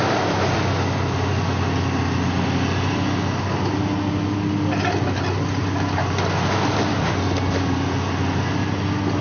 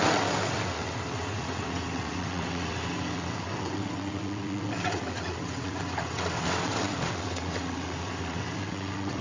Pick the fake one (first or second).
second